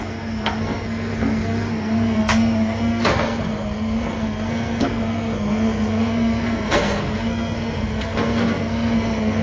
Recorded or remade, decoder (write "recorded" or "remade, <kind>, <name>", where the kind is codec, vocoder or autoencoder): remade, codec, SNAC